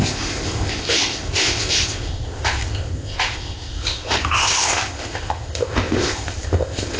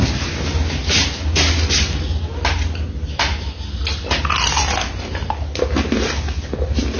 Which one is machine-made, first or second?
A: first